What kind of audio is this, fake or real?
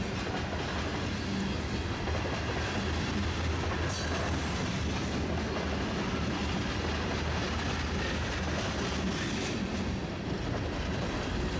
real